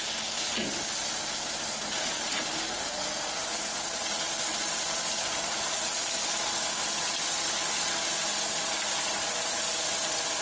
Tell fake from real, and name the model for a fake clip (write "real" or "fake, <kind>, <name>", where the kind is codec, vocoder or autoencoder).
real